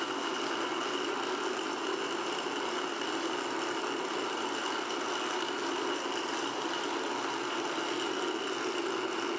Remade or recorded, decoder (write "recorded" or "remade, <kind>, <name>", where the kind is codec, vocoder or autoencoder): recorded